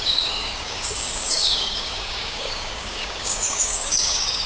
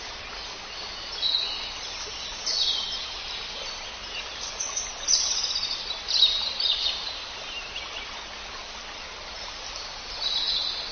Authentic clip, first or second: second